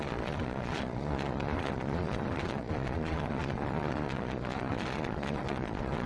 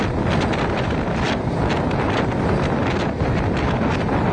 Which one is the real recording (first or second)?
second